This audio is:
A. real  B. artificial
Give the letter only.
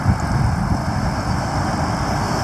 B